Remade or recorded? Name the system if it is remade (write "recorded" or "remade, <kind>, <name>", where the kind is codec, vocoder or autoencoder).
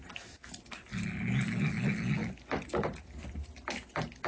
recorded